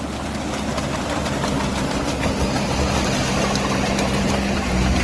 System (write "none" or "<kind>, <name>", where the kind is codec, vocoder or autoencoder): none